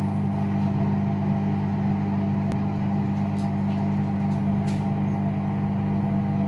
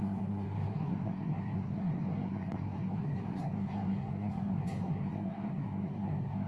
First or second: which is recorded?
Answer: first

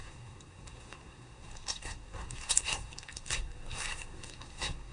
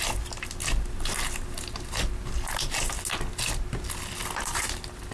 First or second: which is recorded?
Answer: second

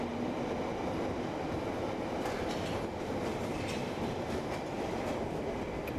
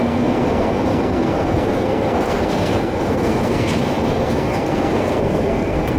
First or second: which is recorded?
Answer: first